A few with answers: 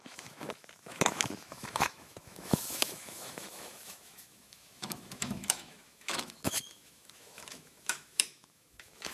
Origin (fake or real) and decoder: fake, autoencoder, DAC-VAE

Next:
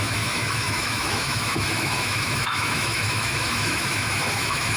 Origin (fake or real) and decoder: fake, autoencoder, DAC-VAE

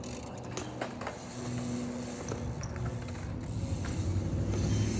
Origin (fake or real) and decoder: real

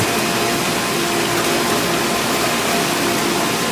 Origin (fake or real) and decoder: real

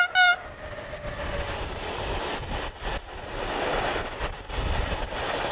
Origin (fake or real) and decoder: real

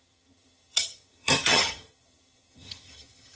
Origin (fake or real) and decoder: fake, vocoder, HiFi-GAN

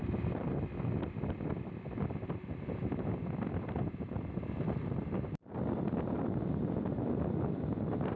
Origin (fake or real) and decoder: real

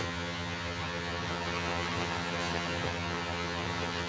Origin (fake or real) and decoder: fake, vocoder, HiFi-GAN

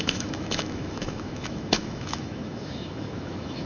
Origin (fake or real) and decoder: fake, autoencoder, DAC-VAE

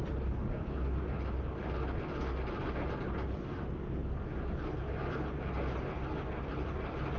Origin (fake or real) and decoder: real